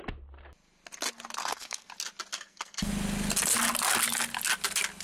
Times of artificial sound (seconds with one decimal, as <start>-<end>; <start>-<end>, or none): 1.4-1.9; 2.3-2.9